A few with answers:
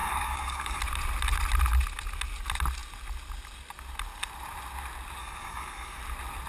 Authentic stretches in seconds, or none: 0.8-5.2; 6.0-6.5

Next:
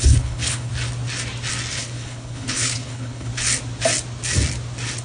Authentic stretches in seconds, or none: 0.7-1.7; 3.3-5.0

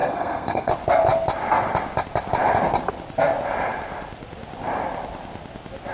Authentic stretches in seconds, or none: 0.7-5.9

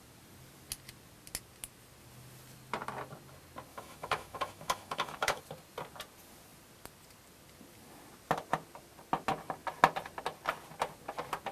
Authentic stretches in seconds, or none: 0.0-3.7; 5.4-11.5

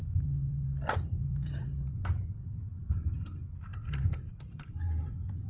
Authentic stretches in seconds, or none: 0.0-3.7; 4.8-5.5